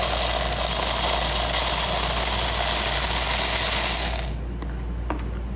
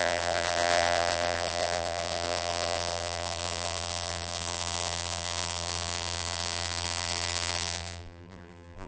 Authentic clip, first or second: first